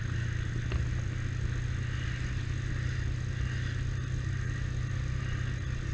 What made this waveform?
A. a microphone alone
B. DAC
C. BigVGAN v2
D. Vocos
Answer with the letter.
A